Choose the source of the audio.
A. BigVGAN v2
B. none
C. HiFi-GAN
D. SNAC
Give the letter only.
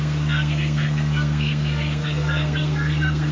D